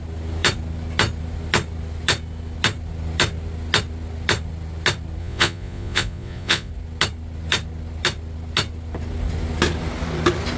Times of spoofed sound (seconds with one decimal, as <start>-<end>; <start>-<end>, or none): 5.2-6.7